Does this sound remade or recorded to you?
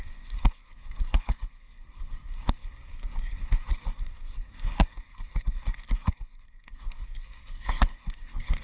remade